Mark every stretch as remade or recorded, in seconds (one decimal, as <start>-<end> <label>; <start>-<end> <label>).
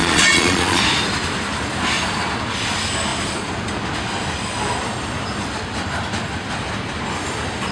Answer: 0.0-0.8 remade; 0.8-7.7 recorded